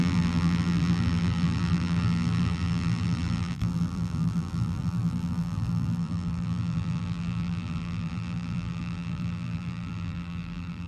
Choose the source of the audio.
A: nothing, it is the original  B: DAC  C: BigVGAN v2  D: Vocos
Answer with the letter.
C